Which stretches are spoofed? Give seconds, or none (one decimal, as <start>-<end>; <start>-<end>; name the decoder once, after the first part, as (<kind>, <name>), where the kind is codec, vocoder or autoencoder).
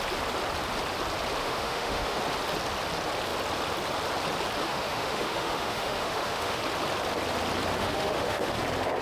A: 1.4-2.2 (autoencoder, DAC-VAE); 4.6-6.6; 7.8-8.5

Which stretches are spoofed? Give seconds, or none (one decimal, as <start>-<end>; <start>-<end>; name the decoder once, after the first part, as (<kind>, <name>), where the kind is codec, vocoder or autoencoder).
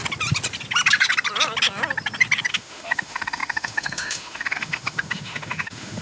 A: 2.5-6.0 (autoencoder, DAC-VAE)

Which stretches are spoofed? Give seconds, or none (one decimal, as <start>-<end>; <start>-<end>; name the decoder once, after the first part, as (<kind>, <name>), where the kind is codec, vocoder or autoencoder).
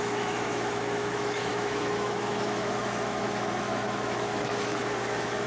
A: 0.0-5.5 (autoencoder, DAC-VAE)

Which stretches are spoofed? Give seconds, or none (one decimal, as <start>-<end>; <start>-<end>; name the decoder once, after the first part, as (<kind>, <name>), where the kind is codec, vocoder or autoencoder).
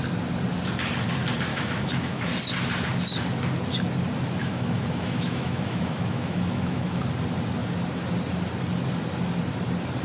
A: 1.5-2.3 (autoencoder, DAC-VAE); 4.4-7.0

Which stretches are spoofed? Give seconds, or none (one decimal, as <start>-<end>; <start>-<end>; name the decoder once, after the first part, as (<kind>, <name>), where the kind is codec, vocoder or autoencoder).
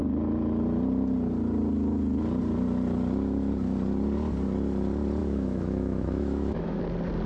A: 5.2-6.8 (autoencoder, DAC-VAE)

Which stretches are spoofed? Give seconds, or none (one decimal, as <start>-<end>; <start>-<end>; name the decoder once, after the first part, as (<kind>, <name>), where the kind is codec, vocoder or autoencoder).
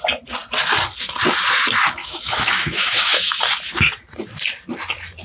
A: 2.0-3.4 (autoencoder, DAC-VAE)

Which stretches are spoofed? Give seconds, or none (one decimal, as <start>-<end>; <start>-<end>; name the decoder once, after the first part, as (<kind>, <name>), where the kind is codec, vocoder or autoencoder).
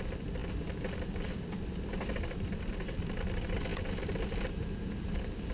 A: none